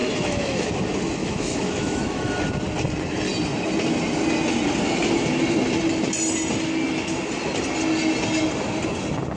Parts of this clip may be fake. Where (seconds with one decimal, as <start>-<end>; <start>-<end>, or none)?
0.0-0.7; 1.2-2.3